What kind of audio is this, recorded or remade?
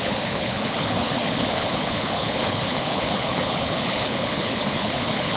remade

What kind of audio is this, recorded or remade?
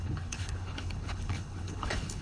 remade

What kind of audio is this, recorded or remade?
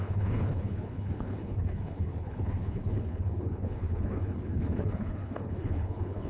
remade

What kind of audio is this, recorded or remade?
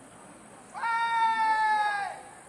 recorded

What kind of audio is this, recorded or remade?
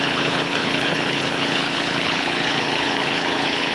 remade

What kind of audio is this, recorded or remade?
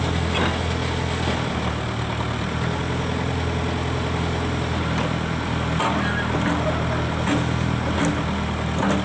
recorded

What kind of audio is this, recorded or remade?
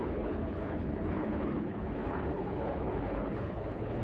remade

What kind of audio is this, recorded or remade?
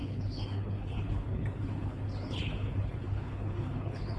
remade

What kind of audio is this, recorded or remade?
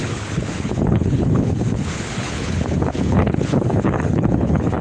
remade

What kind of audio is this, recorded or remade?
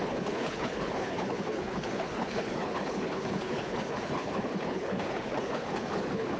remade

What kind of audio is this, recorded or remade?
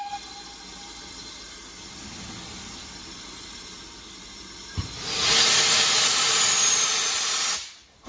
recorded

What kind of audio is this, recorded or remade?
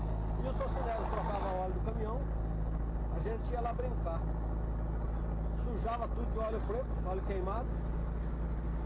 recorded